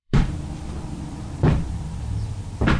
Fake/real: fake